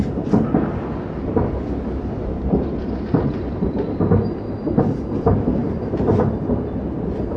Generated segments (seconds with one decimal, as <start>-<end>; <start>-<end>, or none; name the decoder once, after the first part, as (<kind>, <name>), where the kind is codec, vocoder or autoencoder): 1.3-3.8 (vocoder, BigVGAN v2); 5.6-7.4